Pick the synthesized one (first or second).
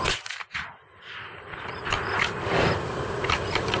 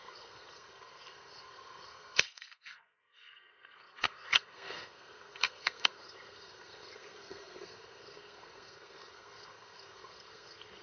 second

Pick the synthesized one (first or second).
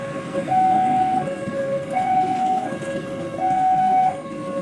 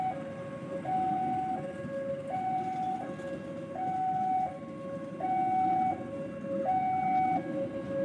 first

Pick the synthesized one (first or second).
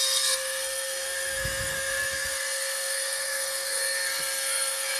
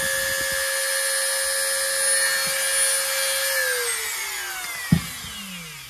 first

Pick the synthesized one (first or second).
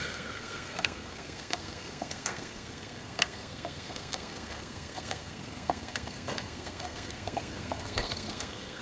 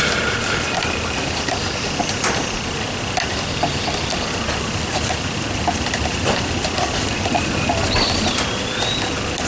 first